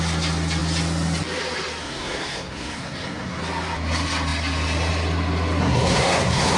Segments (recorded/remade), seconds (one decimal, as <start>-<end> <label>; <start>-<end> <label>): 0.0-1.8 recorded; 1.8-3.4 remade; 3.4-5.6 recorded; 5.6-6.6 remade